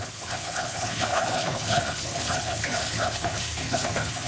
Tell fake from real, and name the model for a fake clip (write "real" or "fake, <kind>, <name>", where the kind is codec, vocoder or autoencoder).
fake, codec, HILCodec